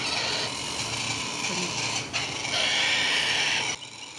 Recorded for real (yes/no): yes